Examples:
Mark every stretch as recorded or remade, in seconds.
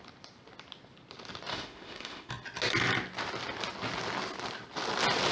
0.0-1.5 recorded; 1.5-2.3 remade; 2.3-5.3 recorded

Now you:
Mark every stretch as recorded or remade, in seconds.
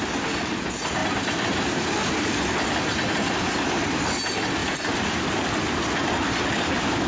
0.0-1.0 recorded; 1.0-3.7 remade; 3.7-4.6 recorded; 4.6-5.7 remade; 5.7-7.1 recorded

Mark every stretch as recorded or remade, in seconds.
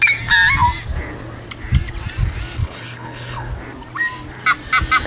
0.0-2.6 recorded; 2.6-3.5 remade; 3.5-5.1 recorded